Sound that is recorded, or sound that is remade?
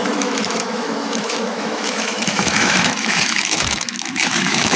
remade